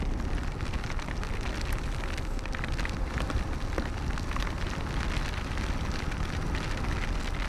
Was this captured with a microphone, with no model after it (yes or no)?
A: yes